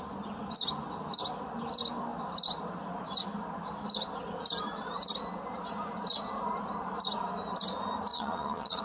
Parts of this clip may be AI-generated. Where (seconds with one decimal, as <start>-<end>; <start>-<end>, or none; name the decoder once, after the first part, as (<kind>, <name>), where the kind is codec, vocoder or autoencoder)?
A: 8.1-8.8 (vocoder, Vocos)